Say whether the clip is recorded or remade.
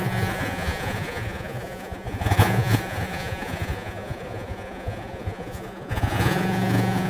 remade